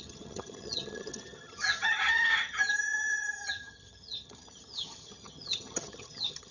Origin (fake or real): fake